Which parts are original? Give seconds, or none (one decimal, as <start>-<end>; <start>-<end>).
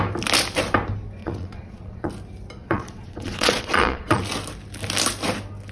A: 0.0-1.2; 2.1-2.6; 4.2-5.7